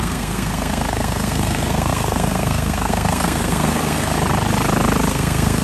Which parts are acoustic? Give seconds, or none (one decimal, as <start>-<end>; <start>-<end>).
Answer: 4.1-5.1